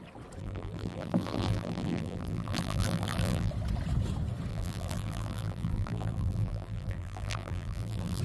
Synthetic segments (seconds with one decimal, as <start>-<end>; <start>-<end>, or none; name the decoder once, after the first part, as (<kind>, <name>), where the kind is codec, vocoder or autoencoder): 0.4-3.5 (vocoder, BigVGAN v2); 4.5-8.2